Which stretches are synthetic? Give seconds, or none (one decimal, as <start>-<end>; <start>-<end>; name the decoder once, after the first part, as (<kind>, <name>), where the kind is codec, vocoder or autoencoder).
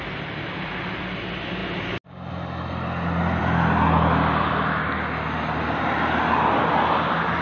none